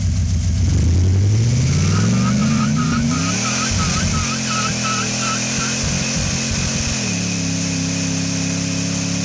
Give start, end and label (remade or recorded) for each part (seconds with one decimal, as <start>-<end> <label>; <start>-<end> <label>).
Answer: 0.0-2.4 recorded; 2.4-3.2 remade; 3.2-9.2 recorded